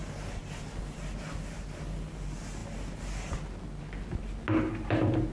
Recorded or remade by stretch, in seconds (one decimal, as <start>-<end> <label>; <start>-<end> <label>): 0.0-5.3 recorded